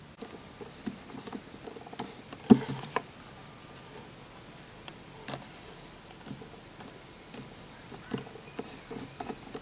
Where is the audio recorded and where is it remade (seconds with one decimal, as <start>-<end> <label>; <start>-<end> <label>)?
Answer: 0.0-9.6 recorded